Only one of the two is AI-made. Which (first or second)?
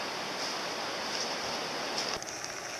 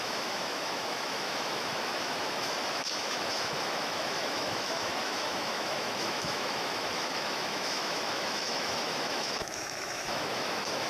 second